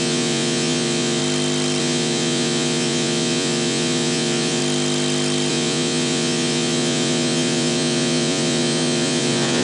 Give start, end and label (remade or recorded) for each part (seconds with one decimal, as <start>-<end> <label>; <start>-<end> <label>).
0.0-1.2 remade; 1.2-1.8 recorded; 1.8-4.6 remade; 4.6-5.5 recorded; 5.5-9.6 remade